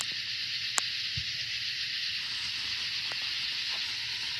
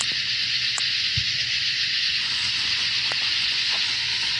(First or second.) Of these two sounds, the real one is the first